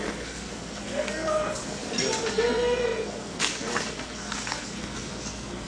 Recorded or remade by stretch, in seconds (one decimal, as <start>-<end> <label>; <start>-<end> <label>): 0.0-1.8 remade; 1.8-2.3 recorded; 2.3-5.7 remade